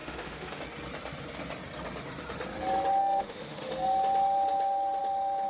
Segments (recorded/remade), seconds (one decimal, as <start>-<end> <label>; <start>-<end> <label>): 0.0-0.6 remade; 0.6-3.0 recorded; 3.0-3.7 remade; 3.7-5.5 recorded